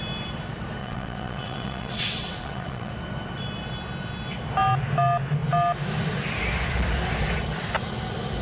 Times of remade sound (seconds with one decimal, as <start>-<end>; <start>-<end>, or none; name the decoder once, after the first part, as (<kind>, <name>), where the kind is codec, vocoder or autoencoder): 0.8-2.9 (vocoder, WaveNeXt)